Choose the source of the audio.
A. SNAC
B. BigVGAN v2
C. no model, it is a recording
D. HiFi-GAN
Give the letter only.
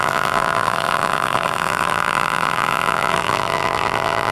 B